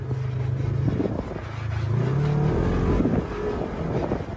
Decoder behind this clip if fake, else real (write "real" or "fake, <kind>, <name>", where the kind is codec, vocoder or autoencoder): real